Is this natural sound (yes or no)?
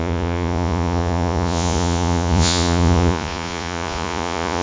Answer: no